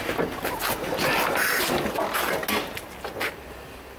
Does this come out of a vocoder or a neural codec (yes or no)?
no